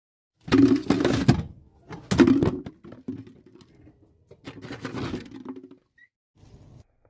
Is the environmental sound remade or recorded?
recorded